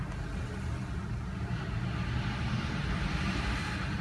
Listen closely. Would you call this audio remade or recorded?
recorded